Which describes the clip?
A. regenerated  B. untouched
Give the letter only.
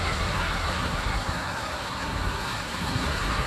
A